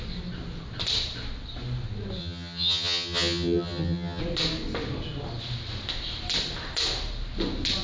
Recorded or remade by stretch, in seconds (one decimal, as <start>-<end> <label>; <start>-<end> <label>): 0.0-2.2 recorded; 2.2-4.2 remade; 4.2-7.8 recorded